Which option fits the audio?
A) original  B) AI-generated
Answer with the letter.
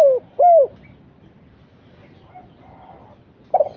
A